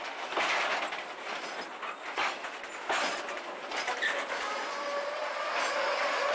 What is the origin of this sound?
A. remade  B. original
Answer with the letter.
B